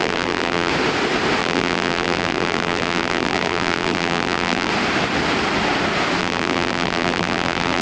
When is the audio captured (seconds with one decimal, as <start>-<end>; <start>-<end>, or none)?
0.7-1.4; 4.7-6.2